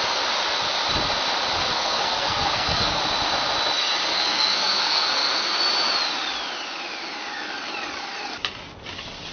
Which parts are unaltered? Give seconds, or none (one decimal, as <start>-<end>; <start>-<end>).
0.0-1.6; 3.0-4.1; 5.6-9.3